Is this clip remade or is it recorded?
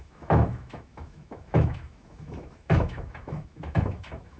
remade